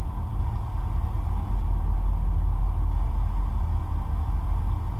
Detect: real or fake real